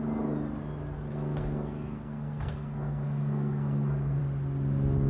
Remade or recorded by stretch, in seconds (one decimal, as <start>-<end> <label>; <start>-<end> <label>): 0.0-1.1 recorded; 1.1-4.2 remade; 4.2-5.1 recorded